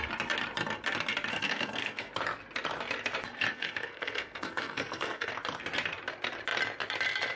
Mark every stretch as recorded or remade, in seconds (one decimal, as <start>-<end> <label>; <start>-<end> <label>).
0.0-1.3 recorded; 1.3-2.1 remade; 2.1-3.5 recorded; 3.5-5.3 remade; 5.3-7.4 recorded